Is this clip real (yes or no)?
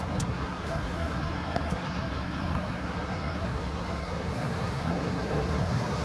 no